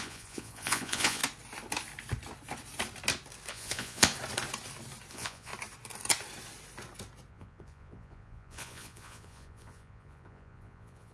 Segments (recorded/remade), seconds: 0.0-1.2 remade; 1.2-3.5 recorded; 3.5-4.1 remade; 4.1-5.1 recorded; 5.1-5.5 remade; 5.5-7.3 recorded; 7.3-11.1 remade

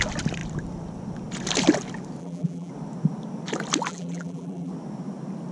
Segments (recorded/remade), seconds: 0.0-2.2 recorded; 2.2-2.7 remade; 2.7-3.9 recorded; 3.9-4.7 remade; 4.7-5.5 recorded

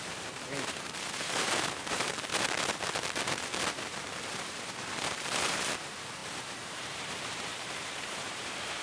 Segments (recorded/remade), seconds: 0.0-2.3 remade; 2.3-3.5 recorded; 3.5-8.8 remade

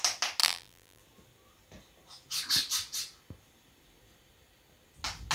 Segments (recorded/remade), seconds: 0.0-0.4 recorded; 0.4-1.0 remade; 1.0-5.3 recorded